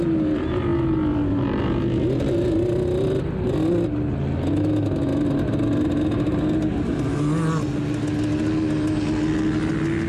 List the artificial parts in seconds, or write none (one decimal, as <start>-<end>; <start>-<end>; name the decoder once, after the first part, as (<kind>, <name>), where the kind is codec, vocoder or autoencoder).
none